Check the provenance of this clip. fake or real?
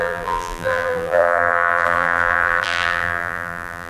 fake